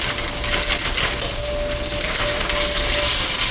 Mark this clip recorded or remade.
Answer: recorded